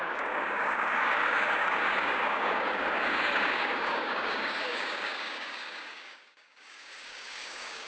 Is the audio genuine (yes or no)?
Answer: no